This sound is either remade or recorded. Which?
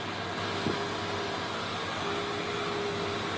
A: recorded